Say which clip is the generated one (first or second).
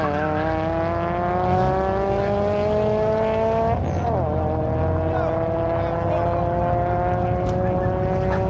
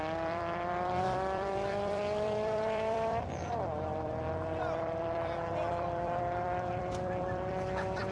second